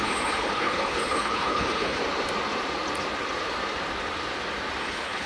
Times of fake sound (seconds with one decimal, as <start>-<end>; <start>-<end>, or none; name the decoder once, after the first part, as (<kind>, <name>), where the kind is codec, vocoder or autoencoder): 0.0-2.0 (codec, HILCodec); 4.8-5.3